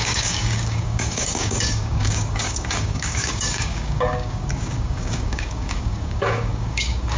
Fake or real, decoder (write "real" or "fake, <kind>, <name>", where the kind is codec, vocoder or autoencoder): fake, codec, DAC